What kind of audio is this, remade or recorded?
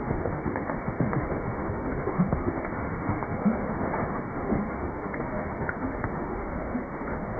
remade